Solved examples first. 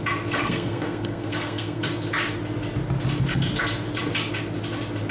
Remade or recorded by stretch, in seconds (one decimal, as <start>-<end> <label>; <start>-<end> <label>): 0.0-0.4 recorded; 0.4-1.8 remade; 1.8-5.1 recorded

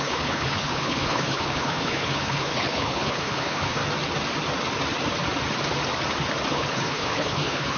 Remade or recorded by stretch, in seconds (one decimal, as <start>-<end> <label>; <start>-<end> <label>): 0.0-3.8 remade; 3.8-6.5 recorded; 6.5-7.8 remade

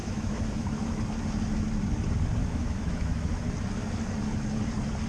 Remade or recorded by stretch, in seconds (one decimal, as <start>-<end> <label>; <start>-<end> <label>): 0.0-1.0 remade; 1.0-2.4 recorded; 2.4-3.4 remade; 3.4-5.1 recorded

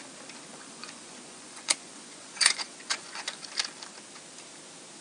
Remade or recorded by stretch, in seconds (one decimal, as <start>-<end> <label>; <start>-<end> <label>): 0.0-0.5 recorded; 0.5-3.5 remade; 3.5-5.0 recorded